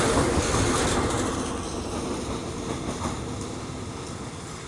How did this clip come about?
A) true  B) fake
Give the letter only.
A